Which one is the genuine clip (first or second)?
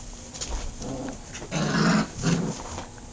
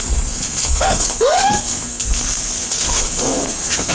first